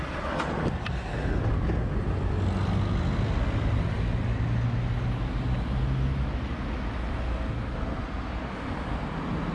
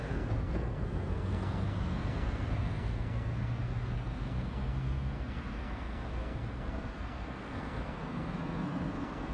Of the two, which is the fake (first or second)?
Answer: second